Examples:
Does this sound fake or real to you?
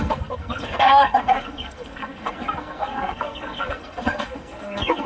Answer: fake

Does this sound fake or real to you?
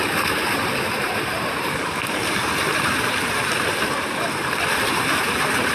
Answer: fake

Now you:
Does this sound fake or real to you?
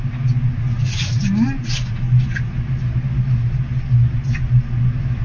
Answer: real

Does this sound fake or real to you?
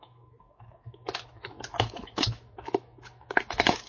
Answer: fake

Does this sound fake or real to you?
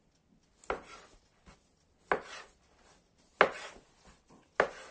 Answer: real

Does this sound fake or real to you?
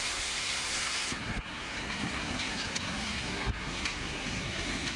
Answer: fake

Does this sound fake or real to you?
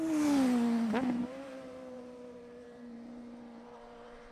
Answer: fake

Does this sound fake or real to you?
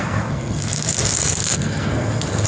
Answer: fake